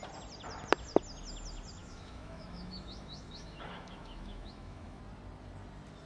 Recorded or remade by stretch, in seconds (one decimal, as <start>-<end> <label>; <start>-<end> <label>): 0.0-1.8 recorded; 1.8-5.0 remade; 5.0-6.1 recorded